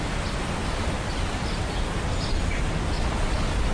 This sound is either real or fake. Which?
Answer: real